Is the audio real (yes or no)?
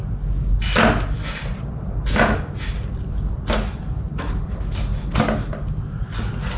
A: yes